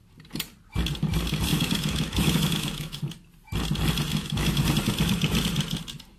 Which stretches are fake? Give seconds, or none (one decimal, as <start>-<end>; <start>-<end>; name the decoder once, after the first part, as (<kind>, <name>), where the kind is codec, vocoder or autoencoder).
1.5-3.0 (autoencoder, DAC-VAE); 4.1-4.6